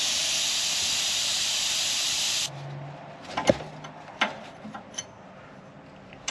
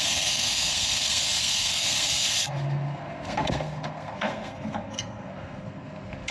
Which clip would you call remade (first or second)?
second